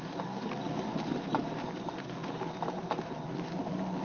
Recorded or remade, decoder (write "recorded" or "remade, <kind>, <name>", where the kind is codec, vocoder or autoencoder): recorded